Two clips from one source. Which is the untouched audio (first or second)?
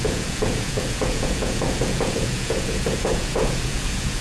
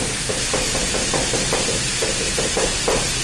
second